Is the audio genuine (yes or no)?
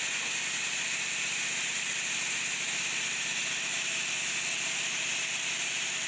yes